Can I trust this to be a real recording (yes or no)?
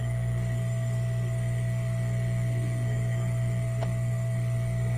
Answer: no